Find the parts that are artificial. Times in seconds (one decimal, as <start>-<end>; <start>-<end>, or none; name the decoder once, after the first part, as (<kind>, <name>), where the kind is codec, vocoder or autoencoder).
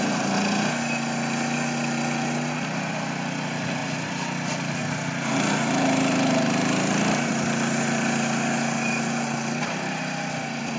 none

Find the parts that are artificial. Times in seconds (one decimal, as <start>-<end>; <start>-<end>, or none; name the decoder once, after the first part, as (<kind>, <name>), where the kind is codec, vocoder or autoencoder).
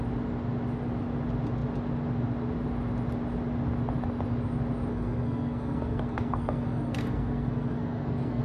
4.9-8.4 (codec, SNAC)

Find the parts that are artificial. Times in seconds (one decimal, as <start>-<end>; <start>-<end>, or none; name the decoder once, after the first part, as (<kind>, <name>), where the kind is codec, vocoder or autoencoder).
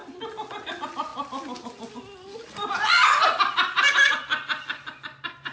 none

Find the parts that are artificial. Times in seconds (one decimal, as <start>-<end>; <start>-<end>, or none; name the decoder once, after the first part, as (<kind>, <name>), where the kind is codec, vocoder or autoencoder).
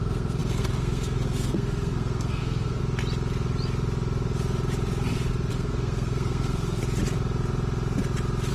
0.0-2.8 (codec, SNAC); 5.5-6.8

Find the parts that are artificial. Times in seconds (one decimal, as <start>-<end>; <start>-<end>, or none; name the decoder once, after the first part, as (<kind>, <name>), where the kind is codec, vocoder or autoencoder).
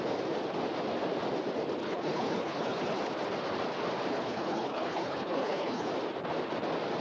1.8-3.0 (codec, HILCodec); 4.1-5.9